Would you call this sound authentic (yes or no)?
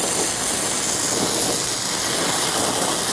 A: yes